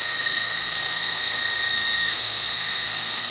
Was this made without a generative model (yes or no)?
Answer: no